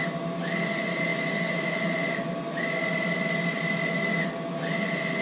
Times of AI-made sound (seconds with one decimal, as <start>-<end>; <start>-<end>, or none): none